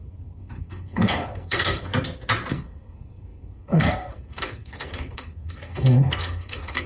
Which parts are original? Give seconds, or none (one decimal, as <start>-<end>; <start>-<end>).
1.9-2.5